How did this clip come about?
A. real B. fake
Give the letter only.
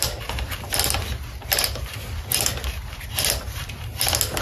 A